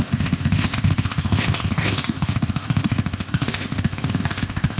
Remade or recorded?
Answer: remade